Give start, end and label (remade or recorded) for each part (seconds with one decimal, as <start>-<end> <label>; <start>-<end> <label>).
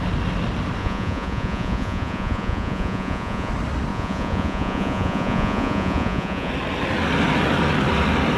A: 0.0-0.8 recorded; 0.8-3.5 remade; 3.5-3.9 recorded; 3.9-6.5 remade; 6.5-8.4 recorded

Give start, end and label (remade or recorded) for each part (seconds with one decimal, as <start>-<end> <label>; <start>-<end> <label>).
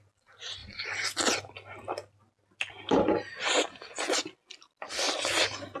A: 0.0-5.8 recorded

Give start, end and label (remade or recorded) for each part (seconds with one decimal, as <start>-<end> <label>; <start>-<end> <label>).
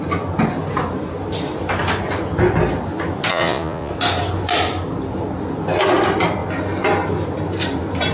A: 0.0-3.3 recorded; 3.3-3.9 remade; 3.9-8.1 recorded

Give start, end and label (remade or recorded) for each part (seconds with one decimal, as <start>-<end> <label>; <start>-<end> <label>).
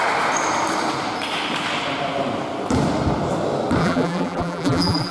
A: 0.0-3.8 recorded; 3.8-5.1 remade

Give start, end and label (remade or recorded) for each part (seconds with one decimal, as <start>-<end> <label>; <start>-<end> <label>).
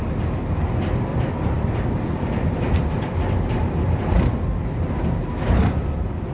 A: 0.0-1.1 recorded; 1.1-4.9 remade; 4.9-6.3 recorded